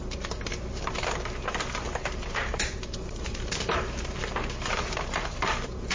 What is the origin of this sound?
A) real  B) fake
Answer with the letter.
B